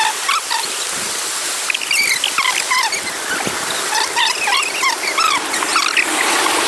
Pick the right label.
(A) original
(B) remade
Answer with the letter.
A